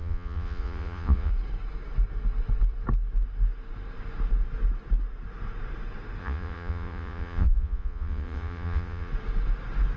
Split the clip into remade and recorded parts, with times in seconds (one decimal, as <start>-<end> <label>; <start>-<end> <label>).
0.0-1.3 remade; 1.3-6.2 recorded; 6.2-9.1 remade; 9.1-10.0 recorded